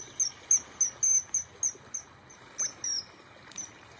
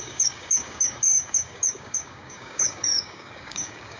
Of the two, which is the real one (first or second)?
first